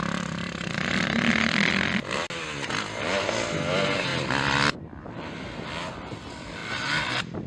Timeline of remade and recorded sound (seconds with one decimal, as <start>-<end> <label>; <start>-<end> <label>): 0.0-7.5 recorded